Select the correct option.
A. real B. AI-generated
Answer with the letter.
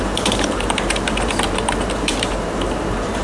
B